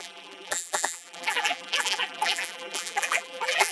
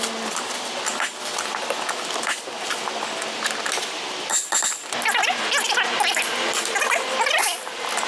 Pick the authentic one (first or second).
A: second